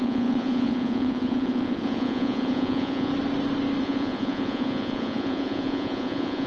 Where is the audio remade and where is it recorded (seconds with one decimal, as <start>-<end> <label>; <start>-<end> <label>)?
0.0-3.1 remade; 3.1-3.8 recorded; 3.8-6.5 remade